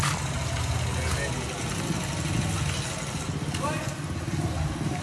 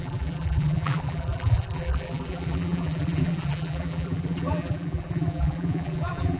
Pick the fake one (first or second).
second